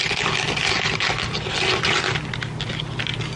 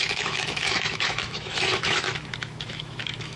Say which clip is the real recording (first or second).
first